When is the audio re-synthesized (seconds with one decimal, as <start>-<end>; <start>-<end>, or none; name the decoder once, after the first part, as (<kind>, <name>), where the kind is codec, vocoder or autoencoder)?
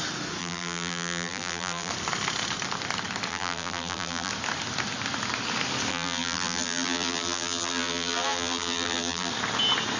0.4-1.9 (vocoder, BigVGAN v2); 3.3-4.3; 5.9-9.3